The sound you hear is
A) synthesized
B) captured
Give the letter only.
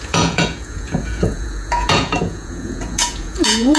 A